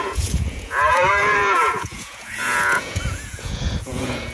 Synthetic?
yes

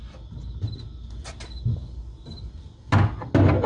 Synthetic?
no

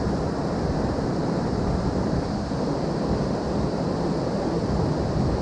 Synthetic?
no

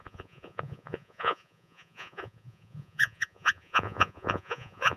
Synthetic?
yes